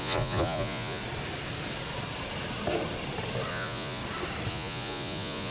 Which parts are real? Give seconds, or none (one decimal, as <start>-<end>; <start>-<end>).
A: 1.0-3.5; 4.0-4.5